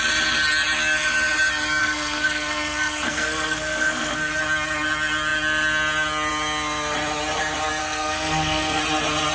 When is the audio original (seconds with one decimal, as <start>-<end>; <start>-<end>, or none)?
0.0-1.8; 4.4-7.8; 8.8-9.3